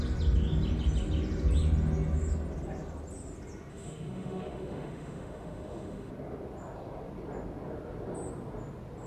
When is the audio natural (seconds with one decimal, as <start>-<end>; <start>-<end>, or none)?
0.0-3.7; 6.1-9.1